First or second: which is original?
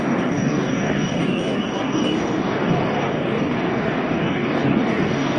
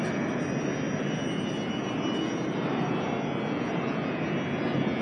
second